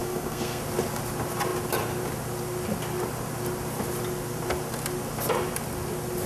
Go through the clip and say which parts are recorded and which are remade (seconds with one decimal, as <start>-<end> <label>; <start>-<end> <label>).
0.0-0.6 remade; 0.6-6.3 recorded

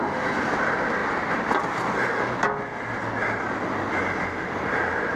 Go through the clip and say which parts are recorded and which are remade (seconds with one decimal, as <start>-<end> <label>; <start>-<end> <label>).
0.0-5.2 recorded